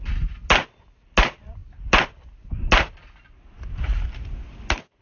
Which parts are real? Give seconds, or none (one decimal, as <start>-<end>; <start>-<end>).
0.0-5.0